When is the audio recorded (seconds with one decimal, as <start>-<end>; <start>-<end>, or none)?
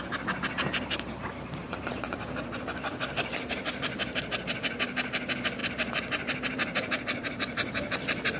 0.0-1.3; 2.0-5.6